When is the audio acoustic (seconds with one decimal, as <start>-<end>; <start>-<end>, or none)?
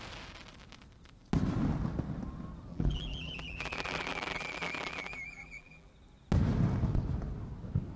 0.0-2.7; 5.9-8.0